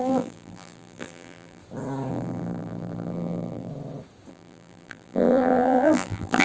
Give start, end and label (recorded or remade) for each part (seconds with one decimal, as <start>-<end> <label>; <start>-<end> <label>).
0.0-1.6 remade; 1.6-2.1 recorded; 2.1-3.7 remade; 3.7-4.3 recorded; 4.3-6.4 remade